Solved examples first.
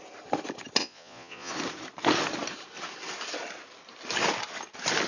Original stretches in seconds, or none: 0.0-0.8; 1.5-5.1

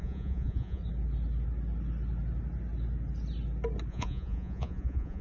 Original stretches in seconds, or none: 0.8-3.9